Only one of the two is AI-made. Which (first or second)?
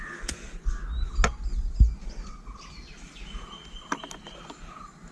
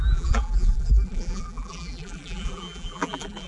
second